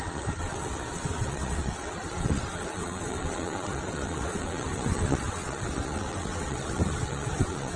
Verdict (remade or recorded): remade